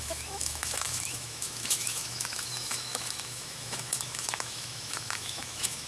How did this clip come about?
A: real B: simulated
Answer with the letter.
B